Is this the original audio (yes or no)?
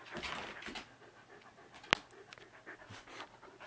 yes